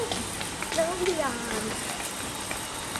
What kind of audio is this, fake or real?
real